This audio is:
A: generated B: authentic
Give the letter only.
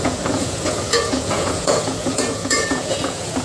A